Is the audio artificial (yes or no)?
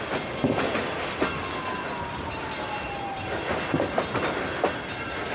yes